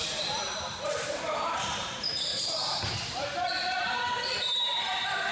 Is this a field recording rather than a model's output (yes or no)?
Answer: no